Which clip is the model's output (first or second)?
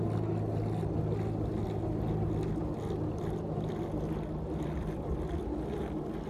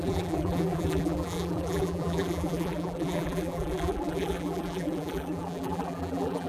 second